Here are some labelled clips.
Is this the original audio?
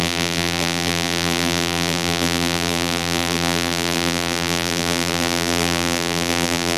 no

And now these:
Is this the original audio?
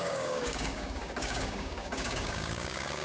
no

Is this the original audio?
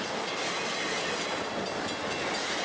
yes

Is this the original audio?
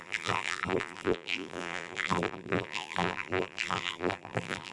no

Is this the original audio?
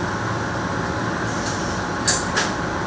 yes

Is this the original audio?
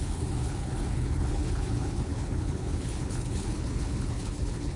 no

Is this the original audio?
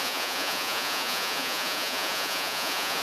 no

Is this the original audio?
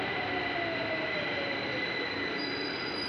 no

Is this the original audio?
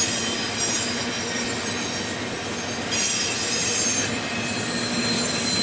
yes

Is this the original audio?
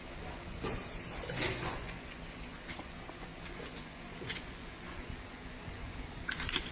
no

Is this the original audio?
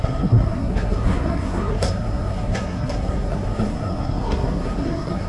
no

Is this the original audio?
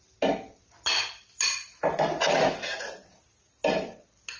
yes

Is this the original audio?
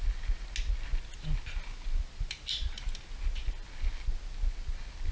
yes